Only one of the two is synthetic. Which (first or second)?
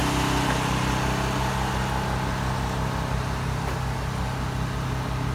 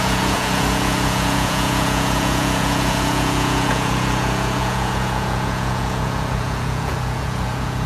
second